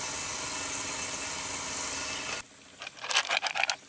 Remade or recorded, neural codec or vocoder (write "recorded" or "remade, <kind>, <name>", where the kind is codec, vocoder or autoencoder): recorded